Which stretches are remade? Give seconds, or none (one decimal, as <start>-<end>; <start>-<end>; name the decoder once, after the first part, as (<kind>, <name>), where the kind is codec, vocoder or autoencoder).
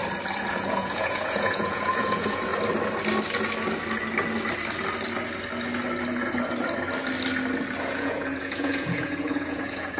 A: 0.5-2.5 (vocoder, Vocos); 7.8-10.0